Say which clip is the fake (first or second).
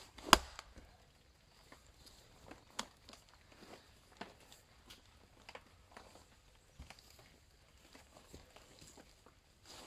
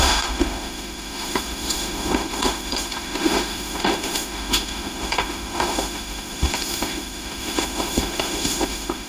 second